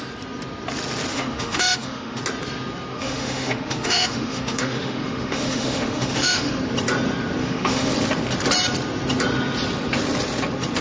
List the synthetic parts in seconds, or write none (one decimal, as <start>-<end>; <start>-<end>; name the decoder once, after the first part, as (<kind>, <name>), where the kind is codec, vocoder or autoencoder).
1.1-2.2 (autoencoder, DAC-VAE); 2.9-6.6; 7.4-7.9